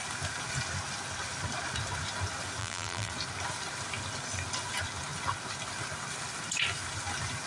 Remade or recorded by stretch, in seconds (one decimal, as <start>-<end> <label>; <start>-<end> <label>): 0.0-2.6 recorded; 2.6-3.1 remade; 3.1-7.5 recorded